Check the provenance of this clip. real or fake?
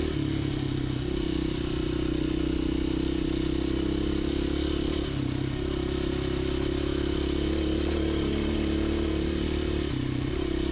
real